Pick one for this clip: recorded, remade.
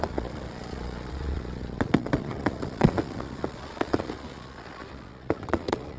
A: remade